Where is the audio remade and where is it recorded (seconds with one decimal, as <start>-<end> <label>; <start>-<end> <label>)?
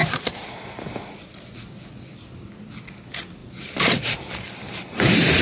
0.0-0.9 remade; 0.9-3.4 recorded; 3.4-5.4 remade